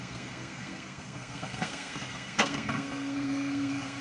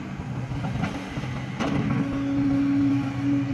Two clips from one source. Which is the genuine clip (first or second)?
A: second